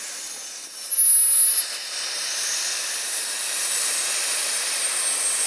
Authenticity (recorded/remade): recorded